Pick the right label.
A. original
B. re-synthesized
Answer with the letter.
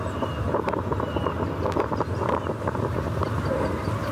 A